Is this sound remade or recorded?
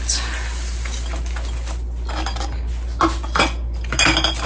recorded